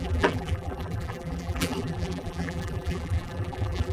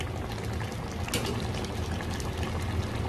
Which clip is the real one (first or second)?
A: second